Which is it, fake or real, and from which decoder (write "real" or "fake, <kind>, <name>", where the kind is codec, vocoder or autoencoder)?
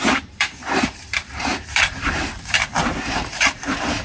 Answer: fake, vocoder, BigVGAN v2